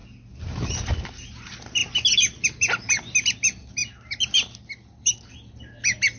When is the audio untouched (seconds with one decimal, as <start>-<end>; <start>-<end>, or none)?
0.0-3.8; 4.6-6.2

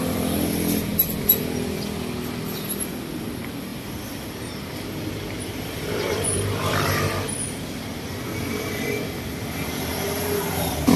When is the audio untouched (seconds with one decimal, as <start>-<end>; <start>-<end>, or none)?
0.9-2.9

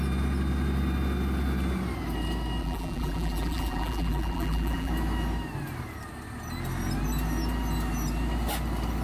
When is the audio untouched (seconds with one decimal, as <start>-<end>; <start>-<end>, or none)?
0.0-2.6; 4.9-9.0

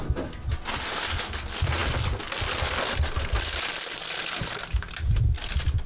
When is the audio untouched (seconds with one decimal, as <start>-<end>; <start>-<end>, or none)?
0.0-5.9

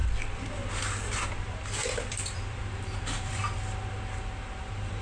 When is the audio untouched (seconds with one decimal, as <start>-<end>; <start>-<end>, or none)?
0.0-1.8; 3.4-5.0

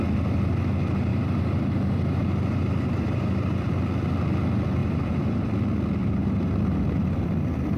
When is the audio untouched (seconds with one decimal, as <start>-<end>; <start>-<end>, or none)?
0.0-1.1; 3.7-4.8; 5.5-6.0; 6.5-7.8

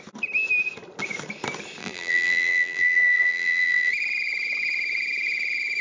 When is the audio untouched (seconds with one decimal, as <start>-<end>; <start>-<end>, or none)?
0.0-1.8; 3.9-5.8

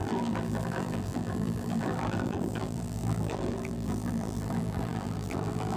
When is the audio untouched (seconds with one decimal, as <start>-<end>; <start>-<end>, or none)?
none